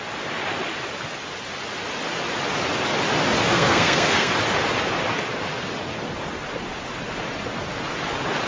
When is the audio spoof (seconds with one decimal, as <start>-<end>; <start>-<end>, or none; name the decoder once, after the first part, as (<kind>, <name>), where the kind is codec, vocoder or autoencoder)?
3.5-4.3 (codec, SNAC)